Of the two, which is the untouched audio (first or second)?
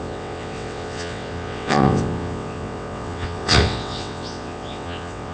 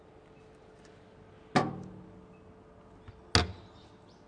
second